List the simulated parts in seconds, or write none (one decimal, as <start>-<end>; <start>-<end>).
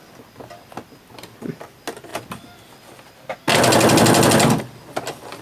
none